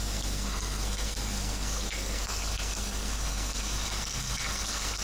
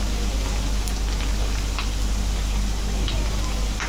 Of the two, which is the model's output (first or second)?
first